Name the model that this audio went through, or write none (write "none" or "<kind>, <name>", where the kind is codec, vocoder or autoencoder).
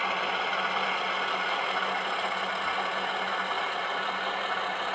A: none